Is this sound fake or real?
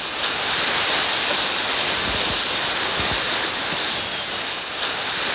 real